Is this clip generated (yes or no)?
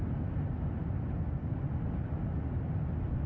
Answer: no